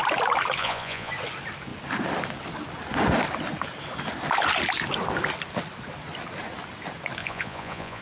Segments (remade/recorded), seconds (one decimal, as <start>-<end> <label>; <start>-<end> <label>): 0.0-0.6 recorded; 0.6-1.1 remade; 1.1-7.2 recorded; 7.2-8.0 remade

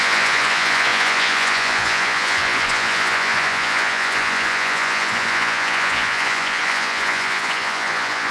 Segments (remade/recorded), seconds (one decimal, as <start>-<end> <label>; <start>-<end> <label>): 0.0-8.3 remade